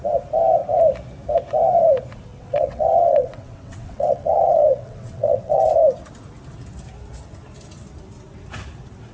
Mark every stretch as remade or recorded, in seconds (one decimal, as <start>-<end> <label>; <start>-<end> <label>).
0.0-2.3 recorded; 2.3-5.6 remade; 5.6-9.1 recorded